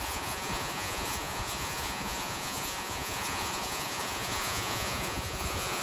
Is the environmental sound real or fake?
fake